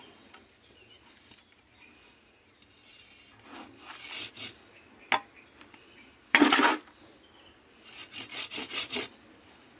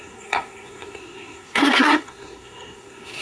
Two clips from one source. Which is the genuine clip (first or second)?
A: first